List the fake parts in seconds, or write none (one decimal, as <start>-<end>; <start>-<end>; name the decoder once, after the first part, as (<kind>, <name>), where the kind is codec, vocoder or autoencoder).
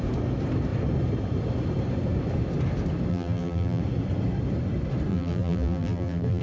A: 3.1-3.8 (vocoder, BigVGAN v2); 5.1-6.4